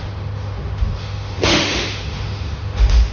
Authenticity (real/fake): fake